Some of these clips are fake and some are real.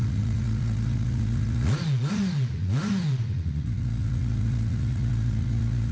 fake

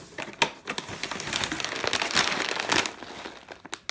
real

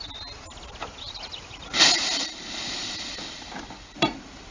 real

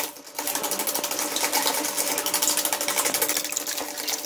real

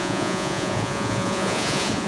fake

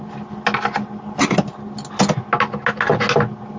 real